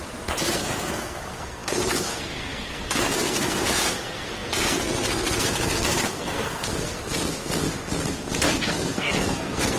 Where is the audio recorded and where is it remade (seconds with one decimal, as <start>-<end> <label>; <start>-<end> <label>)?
0.0-9.8 remade